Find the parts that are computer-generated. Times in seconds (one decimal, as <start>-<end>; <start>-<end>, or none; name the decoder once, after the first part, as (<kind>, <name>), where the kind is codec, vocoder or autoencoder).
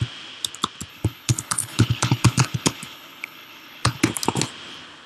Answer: 0.9-4.0 (codec, HILCodec)